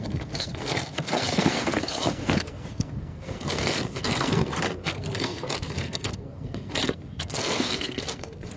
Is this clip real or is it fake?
fake